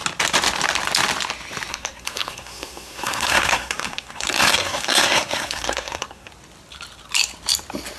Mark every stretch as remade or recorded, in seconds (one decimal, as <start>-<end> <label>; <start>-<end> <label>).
0.0-1.7 recorded; 1.7-6.3 remade; 6.3-8.0 recorded